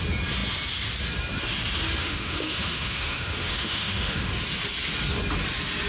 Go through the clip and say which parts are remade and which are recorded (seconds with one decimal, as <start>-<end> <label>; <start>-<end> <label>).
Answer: 0.0-2.0 recorded; 2.0-4.3 remade; 4.3-5.9 recorded